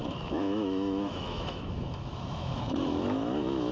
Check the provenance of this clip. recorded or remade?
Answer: remade